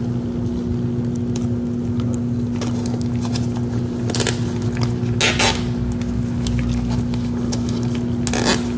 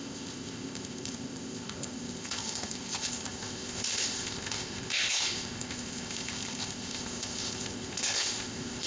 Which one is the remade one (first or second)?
second